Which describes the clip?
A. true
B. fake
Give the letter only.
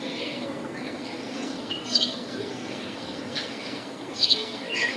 B